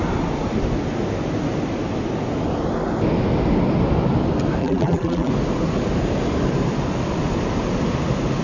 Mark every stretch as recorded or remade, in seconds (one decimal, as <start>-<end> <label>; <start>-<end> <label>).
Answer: 0.0-4.6 recorded; 4.6-5.3 remade; 5.3-8.4 recorded